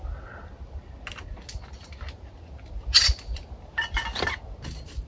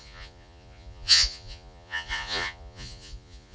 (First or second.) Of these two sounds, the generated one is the second